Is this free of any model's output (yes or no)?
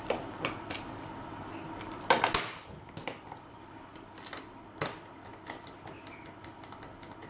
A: yes